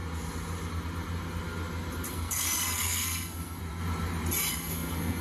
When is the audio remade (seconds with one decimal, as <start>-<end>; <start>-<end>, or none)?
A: 2.1-3.6; 4.5-5.2